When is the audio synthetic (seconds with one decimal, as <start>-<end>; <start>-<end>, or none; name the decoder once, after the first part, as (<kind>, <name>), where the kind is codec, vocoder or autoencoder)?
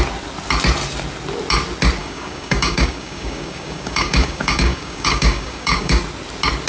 2.0-6.0 (codec, DAC)